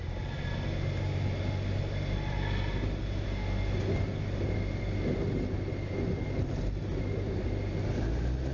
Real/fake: real